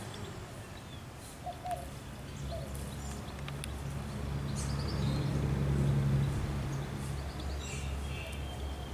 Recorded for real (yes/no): yes